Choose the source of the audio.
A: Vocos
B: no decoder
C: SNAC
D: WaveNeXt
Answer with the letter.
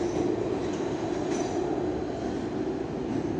B